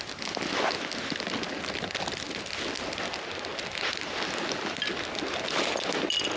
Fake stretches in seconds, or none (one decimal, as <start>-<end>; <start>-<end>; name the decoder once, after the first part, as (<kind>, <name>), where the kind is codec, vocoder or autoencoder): none